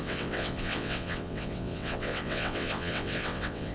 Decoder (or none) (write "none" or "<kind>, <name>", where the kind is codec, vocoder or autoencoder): vocoder, WaveNeXt